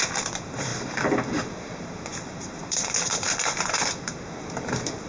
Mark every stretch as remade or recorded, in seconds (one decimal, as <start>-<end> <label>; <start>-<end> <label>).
0.0-5.1 remade